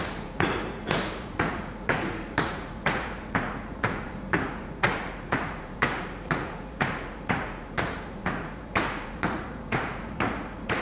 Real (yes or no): no